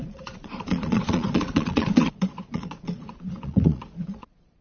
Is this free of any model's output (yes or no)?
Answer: no